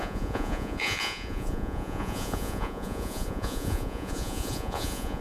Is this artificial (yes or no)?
yes